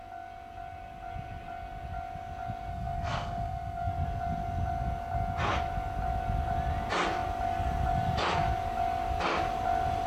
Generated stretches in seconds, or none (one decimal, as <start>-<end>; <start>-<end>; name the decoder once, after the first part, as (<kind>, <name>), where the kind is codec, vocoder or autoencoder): 2.7-3.9 (codec, SNAC)